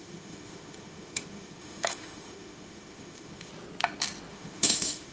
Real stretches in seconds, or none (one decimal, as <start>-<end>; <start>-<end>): 3.5-4.3